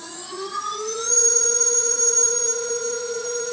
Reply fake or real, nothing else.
fake